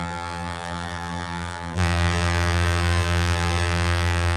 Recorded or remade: remade